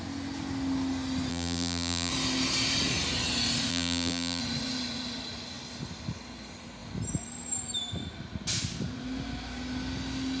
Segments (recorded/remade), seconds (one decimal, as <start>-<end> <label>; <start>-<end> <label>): 0.0-1.3 recorded; 1.3-2.1 remade; 2.1-3.7 recorded; 3.7-4.4 remade; 4.4-10.4 recorded